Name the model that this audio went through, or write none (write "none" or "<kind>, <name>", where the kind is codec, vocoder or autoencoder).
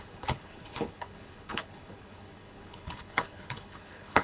codec, HILCodec